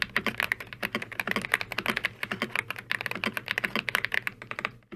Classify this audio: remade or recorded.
recorded